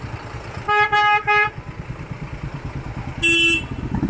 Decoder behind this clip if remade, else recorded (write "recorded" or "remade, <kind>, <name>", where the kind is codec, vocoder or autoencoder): recorded